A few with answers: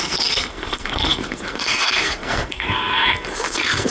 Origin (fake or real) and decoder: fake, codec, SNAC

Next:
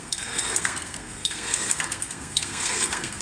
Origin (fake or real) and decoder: fake, codec, SNAC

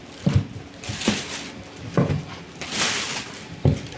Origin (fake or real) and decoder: real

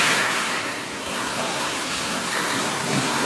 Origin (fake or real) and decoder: fake, codec, SNAC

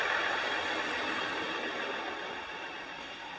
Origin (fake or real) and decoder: real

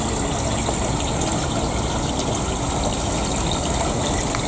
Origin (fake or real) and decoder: real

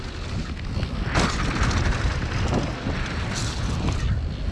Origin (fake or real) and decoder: real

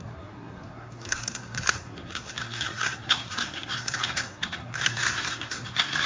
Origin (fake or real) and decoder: fake, codec, SNAC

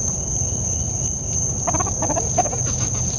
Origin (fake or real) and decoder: real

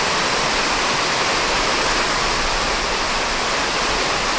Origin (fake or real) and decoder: real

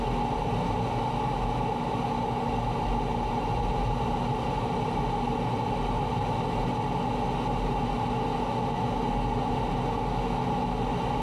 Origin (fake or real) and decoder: real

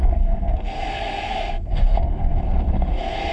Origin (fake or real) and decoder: fake, codec, SNAC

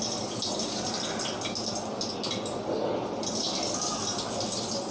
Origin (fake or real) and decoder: real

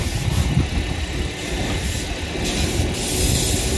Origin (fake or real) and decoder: real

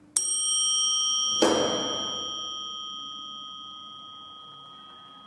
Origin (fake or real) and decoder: real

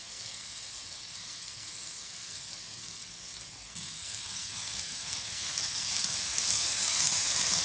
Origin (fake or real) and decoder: fake, codec, SNAC